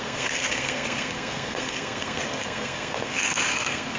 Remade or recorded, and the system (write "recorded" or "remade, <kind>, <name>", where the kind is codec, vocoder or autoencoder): remade, codec, SNAC